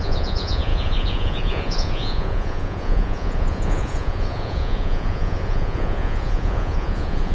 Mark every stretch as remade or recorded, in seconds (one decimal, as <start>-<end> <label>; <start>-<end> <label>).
0.0-7.3 remade